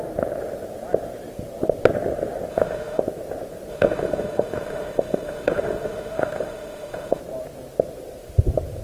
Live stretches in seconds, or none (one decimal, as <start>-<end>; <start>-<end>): 0.0-2.5; 3.0-3.7; 7.2-8.8